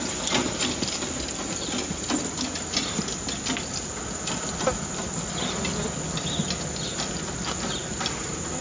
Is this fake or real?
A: real